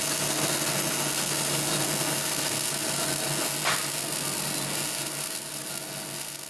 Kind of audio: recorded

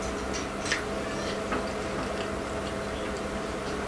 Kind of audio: recorded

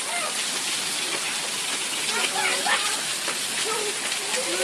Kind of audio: recorded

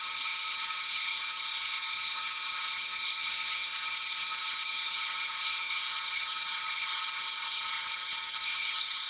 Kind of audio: remade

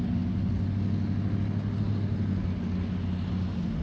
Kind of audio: recorded